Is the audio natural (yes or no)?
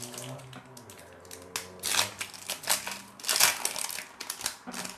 yes